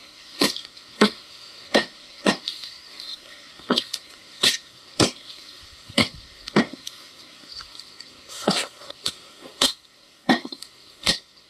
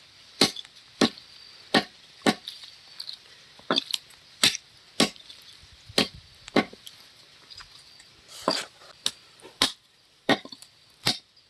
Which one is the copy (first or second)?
first